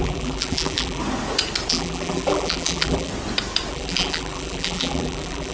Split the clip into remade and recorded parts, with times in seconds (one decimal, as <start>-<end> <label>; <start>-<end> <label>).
0.0-1.0 remade; 1.0-1.7 recorded; 1.7-3.1 remade; 3.1-3.7 recorded; 3.7-5.5 remade